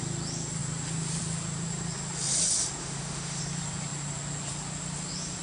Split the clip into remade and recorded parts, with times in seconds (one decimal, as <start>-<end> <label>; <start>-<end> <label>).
0.0-2.8 recorded; 2.8-3.4 remade; 3.4-5.4 recorded